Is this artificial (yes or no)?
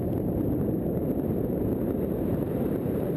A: yes